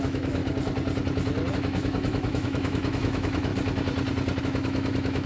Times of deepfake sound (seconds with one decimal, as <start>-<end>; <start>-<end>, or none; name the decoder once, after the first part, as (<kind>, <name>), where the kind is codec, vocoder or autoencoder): 0.0-0.4 (autoencoder, DAC-VAE); 1.5-3.5; 4.4-5.3